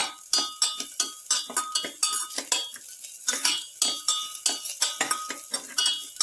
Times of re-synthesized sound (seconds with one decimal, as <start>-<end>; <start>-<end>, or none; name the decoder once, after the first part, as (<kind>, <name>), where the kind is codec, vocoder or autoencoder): 3.2-3.7 (codec, DAC)